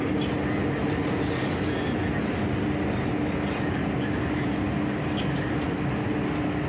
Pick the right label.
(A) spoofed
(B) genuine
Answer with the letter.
B